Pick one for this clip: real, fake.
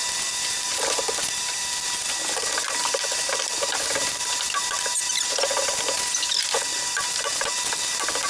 real